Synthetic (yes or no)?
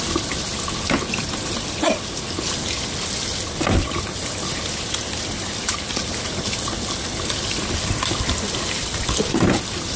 no